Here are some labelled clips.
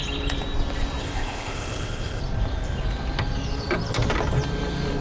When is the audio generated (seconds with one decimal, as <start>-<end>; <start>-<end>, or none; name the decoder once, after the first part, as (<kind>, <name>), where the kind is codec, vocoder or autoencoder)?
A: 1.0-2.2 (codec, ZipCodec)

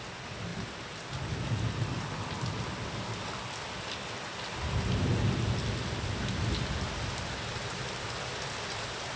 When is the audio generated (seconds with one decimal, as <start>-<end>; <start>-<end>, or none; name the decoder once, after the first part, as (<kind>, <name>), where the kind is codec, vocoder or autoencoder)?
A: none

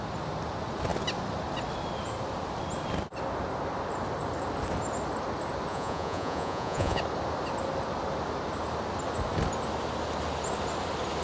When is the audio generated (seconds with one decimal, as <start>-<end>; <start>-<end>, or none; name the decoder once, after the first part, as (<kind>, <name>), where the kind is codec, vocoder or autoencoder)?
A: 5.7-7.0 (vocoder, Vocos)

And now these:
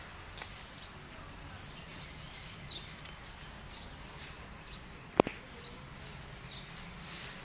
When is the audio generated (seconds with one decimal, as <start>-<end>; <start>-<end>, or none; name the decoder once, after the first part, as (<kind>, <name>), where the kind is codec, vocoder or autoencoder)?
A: none

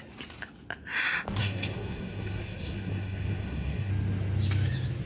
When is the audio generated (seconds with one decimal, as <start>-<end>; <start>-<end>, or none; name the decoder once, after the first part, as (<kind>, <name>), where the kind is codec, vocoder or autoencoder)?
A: 1.4-3.9 (codec, SNAC)

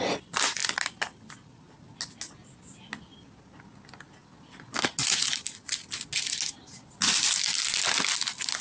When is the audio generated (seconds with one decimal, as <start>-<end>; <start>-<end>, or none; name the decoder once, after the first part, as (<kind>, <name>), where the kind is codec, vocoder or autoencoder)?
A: none

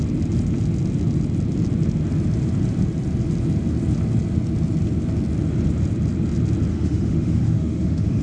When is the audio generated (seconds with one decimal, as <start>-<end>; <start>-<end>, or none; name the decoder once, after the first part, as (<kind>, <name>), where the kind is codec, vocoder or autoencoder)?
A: 6.7-8.2 (autoencoder, DAC-VAE)